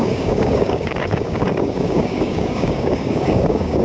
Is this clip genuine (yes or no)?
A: no